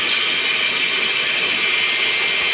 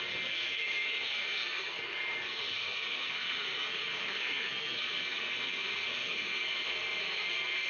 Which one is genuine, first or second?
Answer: first